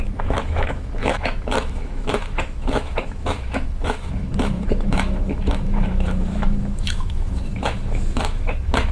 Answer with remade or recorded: remade